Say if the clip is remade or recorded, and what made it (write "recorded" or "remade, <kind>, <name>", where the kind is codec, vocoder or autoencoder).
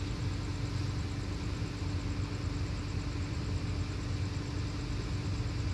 recorded